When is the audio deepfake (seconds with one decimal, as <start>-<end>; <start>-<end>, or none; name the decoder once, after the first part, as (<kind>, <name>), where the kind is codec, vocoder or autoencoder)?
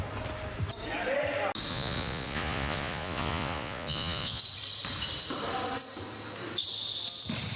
1.7-4.4 (vocoder, Vocos)